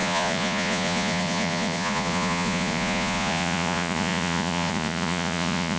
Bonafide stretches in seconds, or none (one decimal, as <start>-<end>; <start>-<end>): none